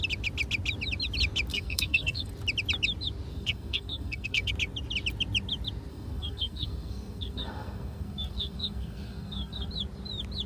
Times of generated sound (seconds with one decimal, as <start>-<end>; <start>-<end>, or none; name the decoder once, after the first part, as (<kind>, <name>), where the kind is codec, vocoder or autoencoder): 1.5-2.3 (codec, SNAC); 3.3-4.5; 5.9-9.7